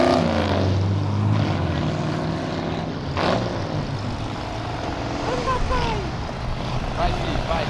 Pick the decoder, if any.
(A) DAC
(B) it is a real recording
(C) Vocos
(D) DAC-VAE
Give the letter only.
B